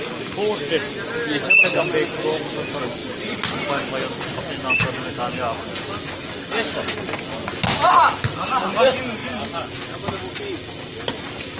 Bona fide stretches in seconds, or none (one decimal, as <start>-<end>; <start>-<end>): 0.0-11.6